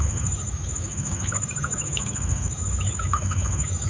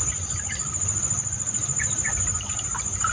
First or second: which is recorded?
second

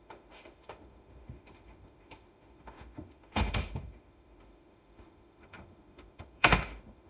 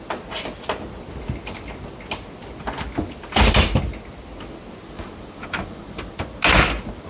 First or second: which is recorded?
second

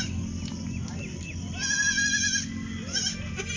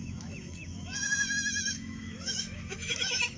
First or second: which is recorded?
first